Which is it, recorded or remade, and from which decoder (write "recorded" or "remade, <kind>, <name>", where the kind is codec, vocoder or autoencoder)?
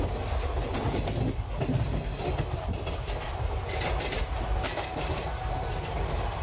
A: recorded